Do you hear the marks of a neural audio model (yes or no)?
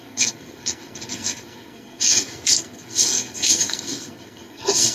yes